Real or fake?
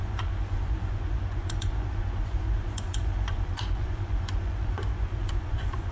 fake